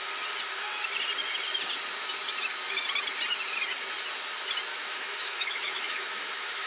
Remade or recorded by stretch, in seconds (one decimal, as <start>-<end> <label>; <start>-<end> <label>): 0.0-4.7 recorded; 4.7-6.7 remade